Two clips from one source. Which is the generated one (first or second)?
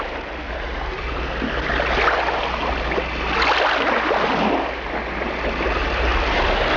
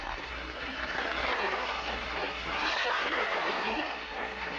second